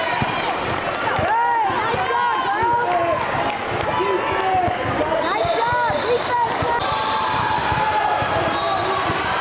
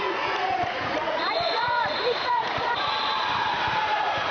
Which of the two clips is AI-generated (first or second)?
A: second